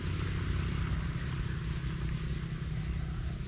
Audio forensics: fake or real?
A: real